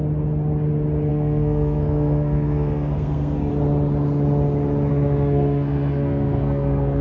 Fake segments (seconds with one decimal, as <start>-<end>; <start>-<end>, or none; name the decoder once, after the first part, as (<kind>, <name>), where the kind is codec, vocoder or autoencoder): 1.1-3.5 (codec, SNAC); 4.9-7.0